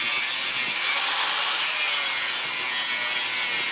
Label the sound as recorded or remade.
recorded